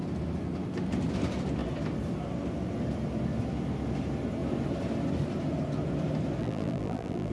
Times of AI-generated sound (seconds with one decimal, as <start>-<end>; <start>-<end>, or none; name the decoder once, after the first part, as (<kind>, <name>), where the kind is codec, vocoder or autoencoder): 6.4-7.3 (vocoder, BigVGAN v2)